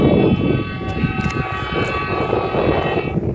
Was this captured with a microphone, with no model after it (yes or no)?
yes